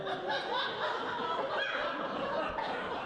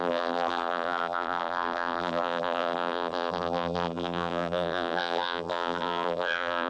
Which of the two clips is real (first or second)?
first